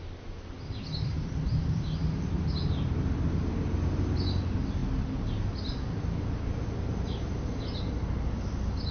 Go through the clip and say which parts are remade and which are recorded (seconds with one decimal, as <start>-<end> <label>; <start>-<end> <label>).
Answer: 0.0-8.9 recorded